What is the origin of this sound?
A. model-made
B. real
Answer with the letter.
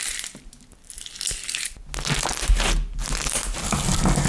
B